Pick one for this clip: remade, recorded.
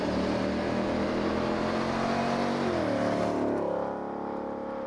recorded